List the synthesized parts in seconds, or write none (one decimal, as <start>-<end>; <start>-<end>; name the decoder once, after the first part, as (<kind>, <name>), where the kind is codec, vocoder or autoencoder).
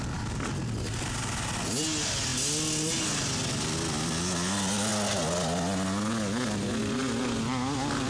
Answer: none